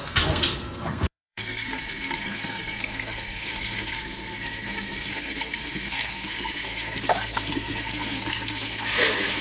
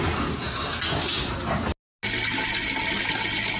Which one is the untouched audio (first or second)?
second